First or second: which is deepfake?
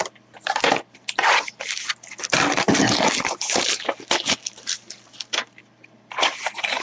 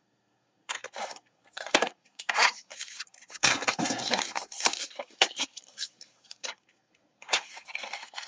second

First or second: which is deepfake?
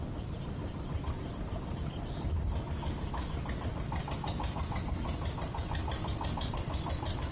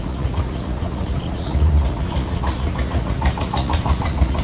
second